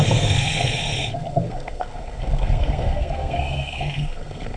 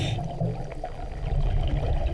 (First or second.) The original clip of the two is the second